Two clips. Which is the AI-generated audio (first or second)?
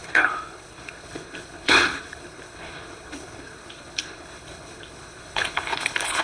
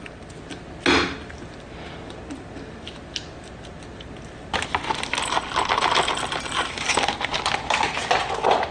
first